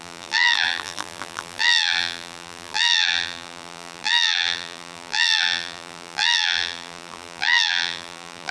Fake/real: fake